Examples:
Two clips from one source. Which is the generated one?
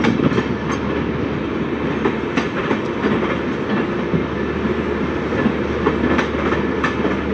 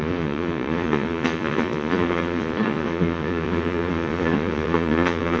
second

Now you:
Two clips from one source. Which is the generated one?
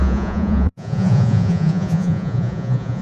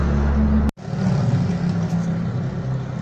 first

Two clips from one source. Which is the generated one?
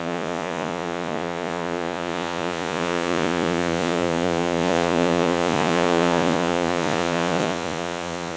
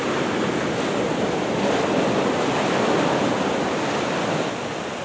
first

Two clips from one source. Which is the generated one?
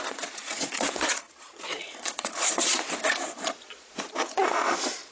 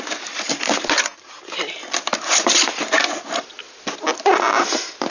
first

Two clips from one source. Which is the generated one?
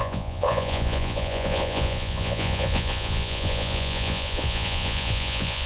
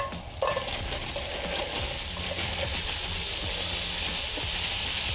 first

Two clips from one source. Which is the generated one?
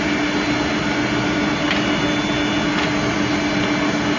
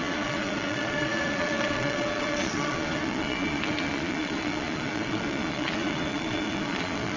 second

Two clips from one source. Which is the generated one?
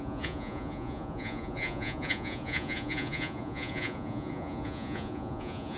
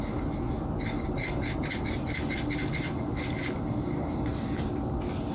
first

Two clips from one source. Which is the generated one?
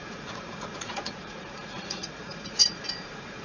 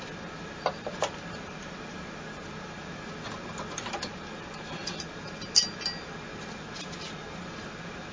first